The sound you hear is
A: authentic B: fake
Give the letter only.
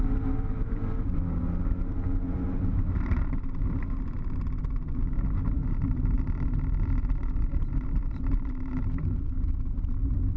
B